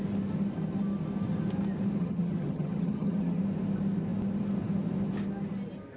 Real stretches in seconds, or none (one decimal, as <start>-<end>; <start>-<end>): 0.0-2.0; 3.4-6.0